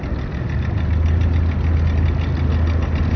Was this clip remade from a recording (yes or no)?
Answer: no